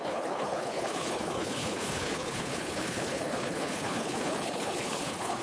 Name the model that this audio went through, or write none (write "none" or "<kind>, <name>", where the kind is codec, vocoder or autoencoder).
codec, HILCodec